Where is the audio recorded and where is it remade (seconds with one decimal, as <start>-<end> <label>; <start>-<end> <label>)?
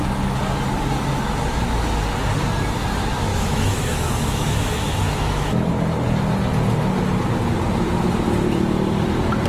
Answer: 0.0-3.3 recorded; 3.3-5.7 remade; 5.7-9.5 recorded